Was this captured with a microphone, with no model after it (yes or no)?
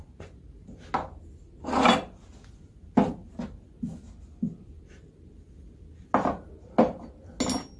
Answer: yes